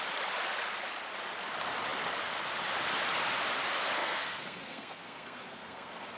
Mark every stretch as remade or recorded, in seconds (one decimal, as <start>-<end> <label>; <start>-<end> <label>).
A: 0.0-4.0 recorded; 4.0-6.2 remade